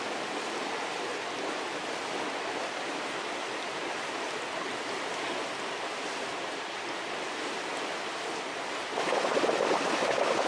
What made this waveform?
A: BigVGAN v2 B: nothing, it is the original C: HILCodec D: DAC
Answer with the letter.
B